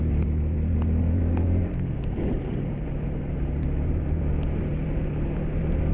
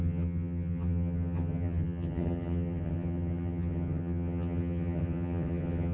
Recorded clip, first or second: first